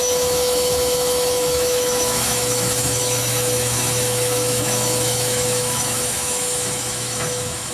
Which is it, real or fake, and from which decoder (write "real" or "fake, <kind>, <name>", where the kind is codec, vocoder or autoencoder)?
fake, autoencoder, DAC-VAE